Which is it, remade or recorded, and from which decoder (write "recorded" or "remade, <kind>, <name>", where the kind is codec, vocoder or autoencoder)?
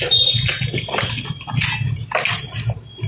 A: recorded